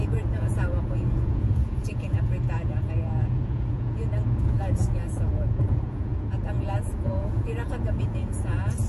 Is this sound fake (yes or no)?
yes